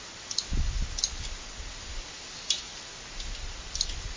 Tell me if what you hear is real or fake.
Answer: real